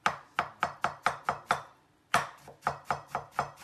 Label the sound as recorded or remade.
recorded